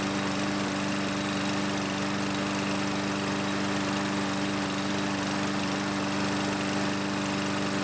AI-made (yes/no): no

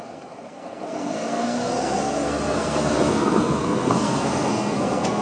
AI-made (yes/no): yes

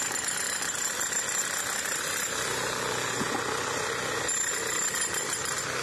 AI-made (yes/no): no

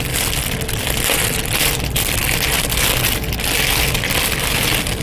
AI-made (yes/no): no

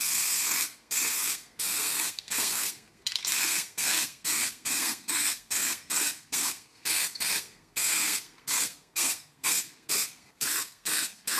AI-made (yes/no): yes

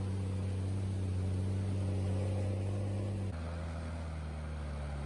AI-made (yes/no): no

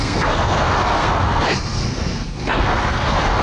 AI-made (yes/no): yes